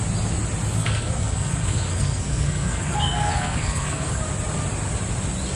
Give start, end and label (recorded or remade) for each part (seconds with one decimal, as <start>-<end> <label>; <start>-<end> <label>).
0.0-0.8 recorded; 0.8-4.2 remade; 4.2-5.6 recorded

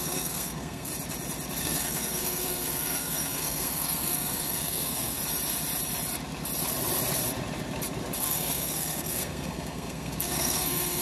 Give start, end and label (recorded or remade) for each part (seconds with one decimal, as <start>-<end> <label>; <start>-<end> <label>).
0.0-0.9 remade; 0.9-1.6 recorded; 1.6-5.2 remade; 5.2-8.2 recorded; 8.2-11.0 remade

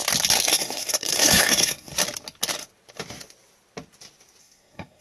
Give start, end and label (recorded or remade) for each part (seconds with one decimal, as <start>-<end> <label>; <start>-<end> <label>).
0.0-0.5 recorded; 0.5-1.9 remade; 1.9-4.4 recorded; 4.4-5.0 remade

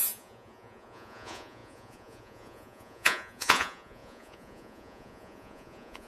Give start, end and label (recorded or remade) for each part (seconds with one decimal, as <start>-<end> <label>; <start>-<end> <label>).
0.0-6.1 remade

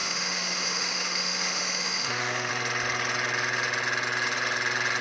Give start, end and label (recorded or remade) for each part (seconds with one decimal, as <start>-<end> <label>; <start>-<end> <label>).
0.0-2.5 remade; 2.5-5.0 recorded

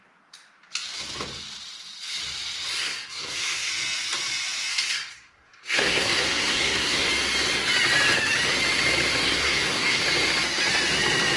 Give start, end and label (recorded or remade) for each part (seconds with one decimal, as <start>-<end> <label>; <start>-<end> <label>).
0.0-2.7 recorded; 2.7-3.7 remade; 3.7-4.7 recorded; 4.7-7.1 remade; 7.1-9.2 recorded; 9.2-10.0 remade; 10.0-11.4 recorded

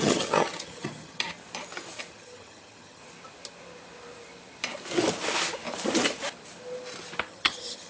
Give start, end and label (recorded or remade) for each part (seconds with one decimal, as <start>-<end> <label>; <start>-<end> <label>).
0.0-1.4 remade; 1.4-2.1 recorded; 2.1-3.0 remade; 3.0-7.2 recorded; 7.2-7.9 remade